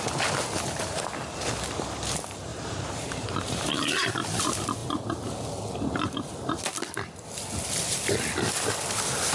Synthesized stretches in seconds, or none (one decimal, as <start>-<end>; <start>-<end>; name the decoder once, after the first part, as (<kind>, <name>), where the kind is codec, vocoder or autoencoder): 2.5-4.1 (vocoder, BigVGAN v2); 4.8-5.3